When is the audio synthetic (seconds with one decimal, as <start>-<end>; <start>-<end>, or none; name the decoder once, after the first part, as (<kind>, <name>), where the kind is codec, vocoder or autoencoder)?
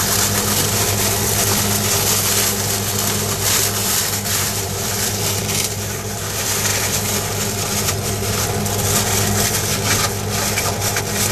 3.8-5.2 (vocoder, BigVGAN v2)